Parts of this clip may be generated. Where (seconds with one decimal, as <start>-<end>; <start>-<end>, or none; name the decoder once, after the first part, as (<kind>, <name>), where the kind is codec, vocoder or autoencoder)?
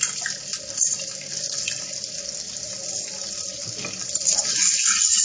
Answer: none